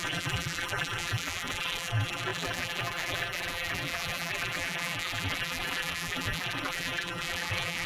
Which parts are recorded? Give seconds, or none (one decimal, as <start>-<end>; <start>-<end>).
none